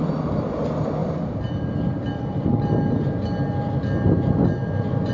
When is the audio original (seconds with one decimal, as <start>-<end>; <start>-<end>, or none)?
0.0-5.1